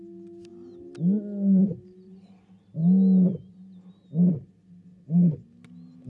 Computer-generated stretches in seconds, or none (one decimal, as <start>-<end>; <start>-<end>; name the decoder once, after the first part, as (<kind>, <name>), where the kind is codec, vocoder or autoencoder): none